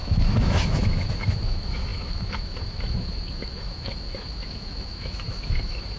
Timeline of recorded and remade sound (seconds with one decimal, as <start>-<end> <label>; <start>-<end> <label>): 0.0-6.0 remade